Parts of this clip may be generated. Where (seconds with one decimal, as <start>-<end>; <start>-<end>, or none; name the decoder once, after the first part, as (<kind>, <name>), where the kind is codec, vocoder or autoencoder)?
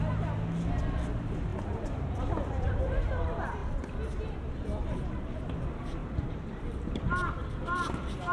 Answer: 1.5-3.1 (vocoder, BigVGAN v2); 6.0-7.0